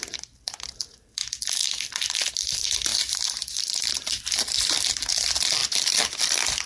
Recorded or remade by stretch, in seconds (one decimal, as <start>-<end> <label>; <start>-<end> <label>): 0.0-1.2 remade; 1.2-1.7 recorded; 1.7-6.7 remade